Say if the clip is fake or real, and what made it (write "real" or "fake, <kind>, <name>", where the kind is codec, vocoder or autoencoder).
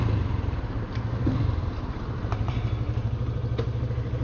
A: fake, vocoder, BigVGAN v2